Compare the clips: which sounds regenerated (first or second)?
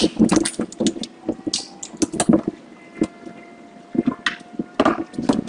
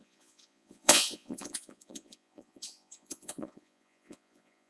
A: second